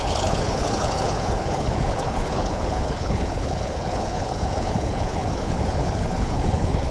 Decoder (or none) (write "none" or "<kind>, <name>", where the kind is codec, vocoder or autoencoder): codec, HILCodec